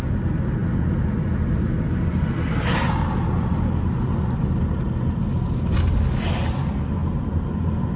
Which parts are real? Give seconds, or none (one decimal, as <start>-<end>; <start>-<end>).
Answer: 0.0-8.0